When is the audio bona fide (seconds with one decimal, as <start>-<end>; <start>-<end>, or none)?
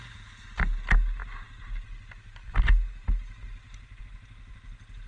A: 0.0-5.1